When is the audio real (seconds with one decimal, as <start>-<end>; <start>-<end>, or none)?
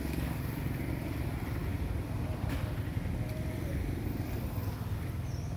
0.0-5.6